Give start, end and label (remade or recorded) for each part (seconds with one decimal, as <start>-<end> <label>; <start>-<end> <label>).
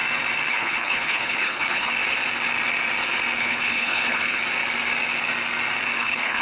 0.0-0.5 recorded; 0.5-1.9 remade; 1.9-3.4 recorded; 3.4-4.4 remade; 4.4-6.0 recorded; 6.0-6.4 remade